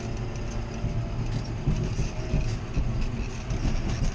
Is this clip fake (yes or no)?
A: no